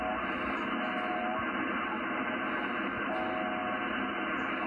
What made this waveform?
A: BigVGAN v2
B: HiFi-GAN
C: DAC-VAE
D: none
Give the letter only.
D